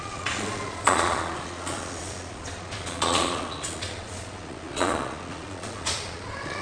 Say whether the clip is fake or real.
fake